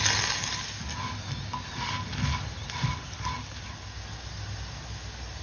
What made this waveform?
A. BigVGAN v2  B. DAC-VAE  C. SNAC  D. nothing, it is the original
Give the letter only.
D